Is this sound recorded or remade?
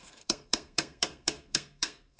remade